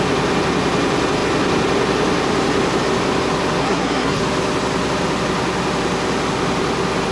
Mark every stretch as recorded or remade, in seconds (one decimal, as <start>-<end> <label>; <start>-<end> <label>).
0.0-3.6 recorded; 3.6-4.2 remade; 4.2-7.1 recorded

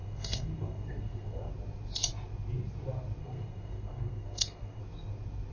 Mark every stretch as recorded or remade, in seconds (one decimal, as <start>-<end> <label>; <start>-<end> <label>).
0.0-1.5 remade; 1.5-3.2 recorded; 3.2-4.8 remade; 4.8-5.5 recorded

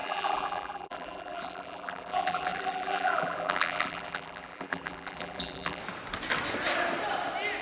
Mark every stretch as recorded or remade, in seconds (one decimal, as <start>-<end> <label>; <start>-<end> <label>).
0.0-5.8 remade; 5.8-7.6 recorded